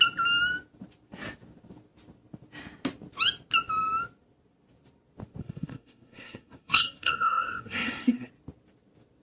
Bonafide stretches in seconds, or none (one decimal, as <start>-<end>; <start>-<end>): 0.0-5.4; 8.3-9.2